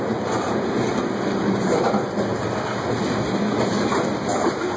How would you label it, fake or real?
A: real